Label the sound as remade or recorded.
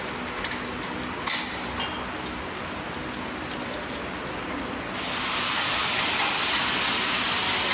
recorded